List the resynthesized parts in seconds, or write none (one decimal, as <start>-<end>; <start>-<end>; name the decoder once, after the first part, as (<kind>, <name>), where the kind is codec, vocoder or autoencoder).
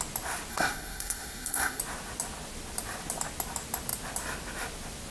0.5-1.8 (codec, SNAC)